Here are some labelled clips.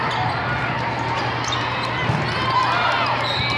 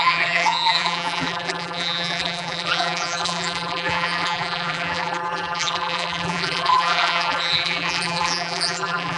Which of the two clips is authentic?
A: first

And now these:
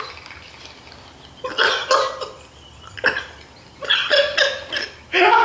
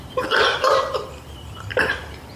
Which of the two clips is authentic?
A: first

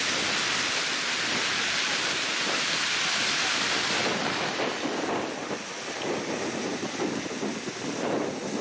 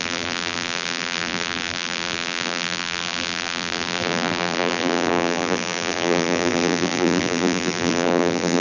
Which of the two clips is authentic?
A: first